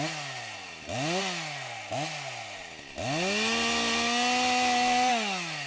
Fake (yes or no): no